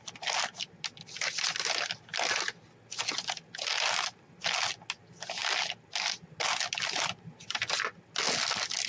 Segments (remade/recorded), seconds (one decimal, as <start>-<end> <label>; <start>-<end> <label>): 0.0-8.9 recorded